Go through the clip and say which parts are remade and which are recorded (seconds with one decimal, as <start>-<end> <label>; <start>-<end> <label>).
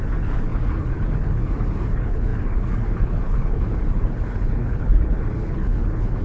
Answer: 0.0-6.2 remade